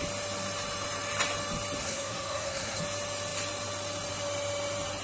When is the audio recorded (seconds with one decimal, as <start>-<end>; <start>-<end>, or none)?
0.0-1.8; 2.8-5.0